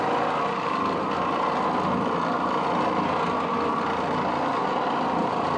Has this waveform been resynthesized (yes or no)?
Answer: no